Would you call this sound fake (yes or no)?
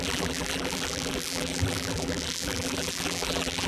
yes